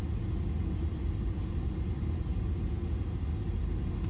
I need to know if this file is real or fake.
real